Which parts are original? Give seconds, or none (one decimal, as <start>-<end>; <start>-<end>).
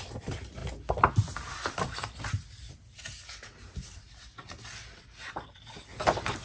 0.0-6.4